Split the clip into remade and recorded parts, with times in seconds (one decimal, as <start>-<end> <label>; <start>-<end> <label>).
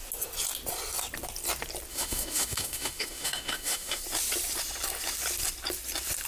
0.0-1.9 recorded; 1.9-4.0 remade; 4.0-6.3 recorded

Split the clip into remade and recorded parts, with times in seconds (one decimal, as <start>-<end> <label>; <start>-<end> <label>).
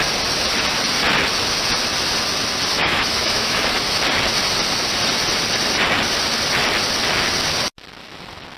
0.0-2.7 recorded; 2.7-3.7 remade; 3.7-8.6 recorded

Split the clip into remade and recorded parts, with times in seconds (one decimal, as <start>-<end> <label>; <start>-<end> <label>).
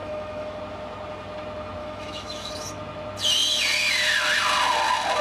0.0-0.6 remade; 0.6-1.8 recorded; 1.8-2.5 remade; 2.5-5.2 recorded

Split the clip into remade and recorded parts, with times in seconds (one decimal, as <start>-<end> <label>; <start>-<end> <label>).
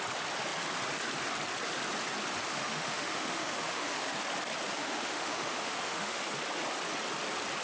0.0-2.5 recorded; 2.5-4.1 remade; 4.1-4.8 recorded; 4.8-6.2 remade; 6.2-7.6 recorded